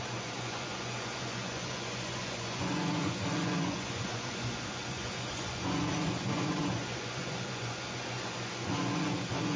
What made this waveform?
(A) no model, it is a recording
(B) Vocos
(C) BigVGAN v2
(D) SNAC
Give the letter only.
B